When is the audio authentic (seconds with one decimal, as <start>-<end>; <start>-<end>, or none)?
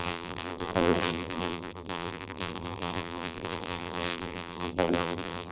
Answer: none